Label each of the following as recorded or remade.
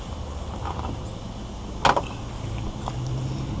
recorded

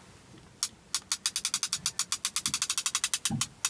recorded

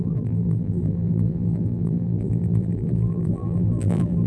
remade